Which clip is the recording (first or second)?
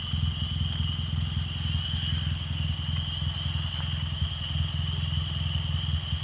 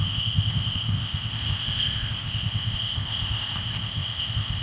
first